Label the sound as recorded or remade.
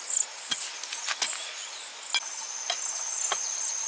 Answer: recorded